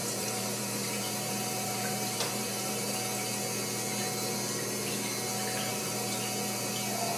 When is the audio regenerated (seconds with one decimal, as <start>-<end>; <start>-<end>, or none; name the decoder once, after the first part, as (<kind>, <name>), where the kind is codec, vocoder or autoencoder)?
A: 0.0-2.9 (vocoder, BigVGAN v2); 5.7-6.2